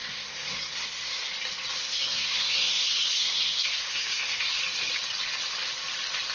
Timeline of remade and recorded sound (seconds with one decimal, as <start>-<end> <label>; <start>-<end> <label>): 0.0-1.3 remade; 1.3-1.8 recorded; 1.8-4.6 remade; 4.6-6.3 recorded